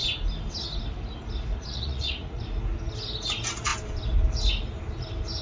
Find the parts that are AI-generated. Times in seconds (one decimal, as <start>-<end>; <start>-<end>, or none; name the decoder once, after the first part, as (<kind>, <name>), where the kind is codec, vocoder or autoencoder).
1.6-2.4 (vocoder, Vocos)